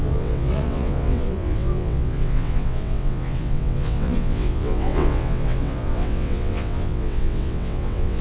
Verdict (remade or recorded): remade